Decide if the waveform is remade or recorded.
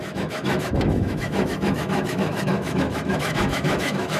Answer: remade